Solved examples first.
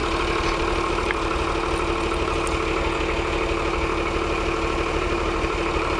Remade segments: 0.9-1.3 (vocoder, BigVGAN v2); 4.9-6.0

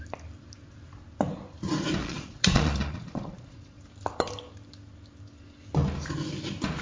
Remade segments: 2.0-3.8 (vocoder, Vocos)

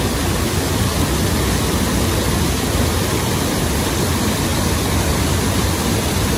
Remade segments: none

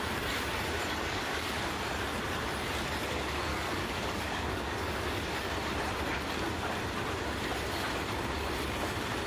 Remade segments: 1.0-1.6 (codec, DAC); 3.5-5.5

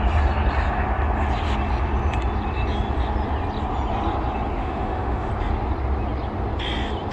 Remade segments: 4.6-5.3 (autoencoder, DAC-VAE)

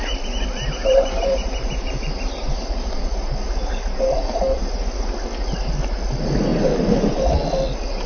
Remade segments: 0.8-4.7 (vocoder, BigVGAN v2); 6.5-7.2

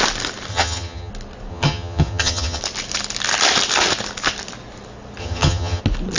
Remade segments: 0.5-1.1 (vocoder, HiFi-GAN); 1.5-2.6; 5.2-5.8